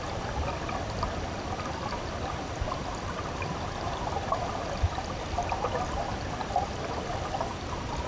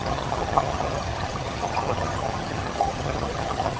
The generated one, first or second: second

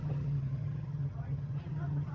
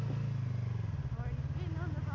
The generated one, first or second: first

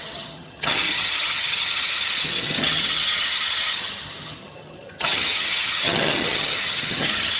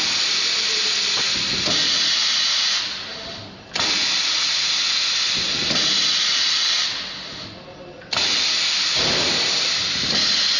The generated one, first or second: first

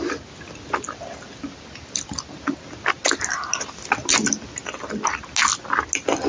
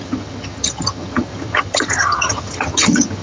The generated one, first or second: second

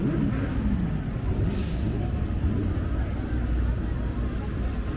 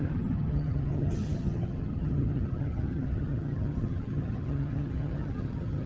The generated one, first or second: second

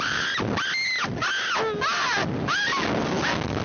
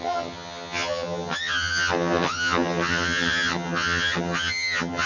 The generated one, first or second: second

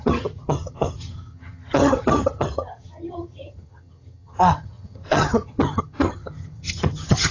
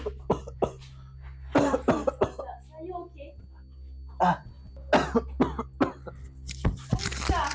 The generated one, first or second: first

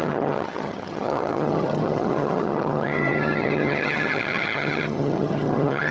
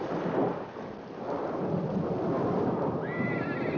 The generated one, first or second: first